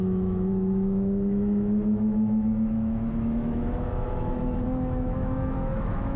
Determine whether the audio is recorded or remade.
remade